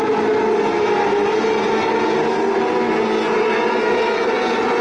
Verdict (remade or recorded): recorded